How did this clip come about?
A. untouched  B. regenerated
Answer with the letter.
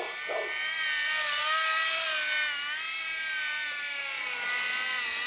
A